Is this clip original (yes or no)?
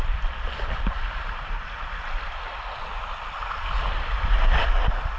yes